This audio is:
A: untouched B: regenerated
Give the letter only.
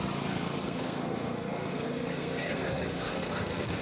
B